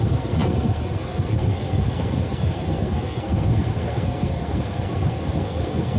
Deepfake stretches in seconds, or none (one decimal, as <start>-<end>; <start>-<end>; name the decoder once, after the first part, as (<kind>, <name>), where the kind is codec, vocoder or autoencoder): 0.0-6.0 (codec, SNAC)